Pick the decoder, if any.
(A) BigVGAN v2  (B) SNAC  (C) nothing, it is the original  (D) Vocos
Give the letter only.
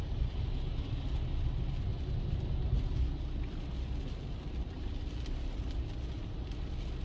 C